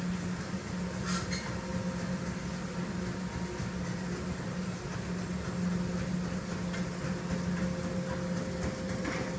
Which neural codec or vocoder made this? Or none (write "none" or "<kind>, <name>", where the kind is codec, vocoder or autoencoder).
none